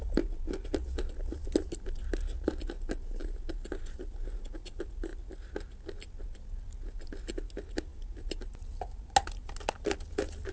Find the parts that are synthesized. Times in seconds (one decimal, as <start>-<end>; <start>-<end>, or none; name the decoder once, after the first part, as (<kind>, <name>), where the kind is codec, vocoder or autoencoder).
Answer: none